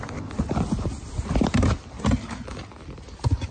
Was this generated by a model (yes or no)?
no